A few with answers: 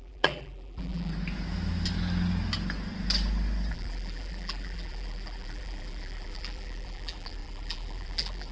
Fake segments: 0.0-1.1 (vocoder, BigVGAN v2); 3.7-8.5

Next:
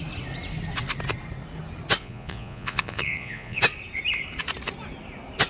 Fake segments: 2.0-3.6 (vocoder, Vocos)

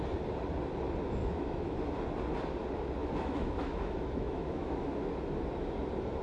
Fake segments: 1.2-1.8 (autoencoder, DAC-VAE); 3.0-4.9